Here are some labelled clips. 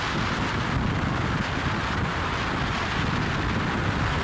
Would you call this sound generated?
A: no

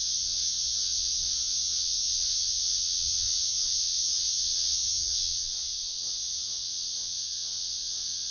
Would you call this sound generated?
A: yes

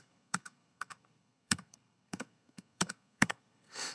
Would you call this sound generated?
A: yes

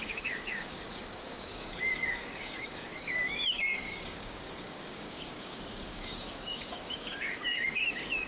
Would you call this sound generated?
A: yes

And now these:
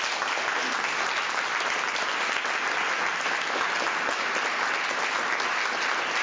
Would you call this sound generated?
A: no